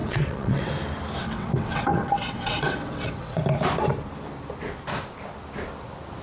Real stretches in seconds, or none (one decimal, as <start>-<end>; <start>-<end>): 0.7-1.2; 3.4-6.2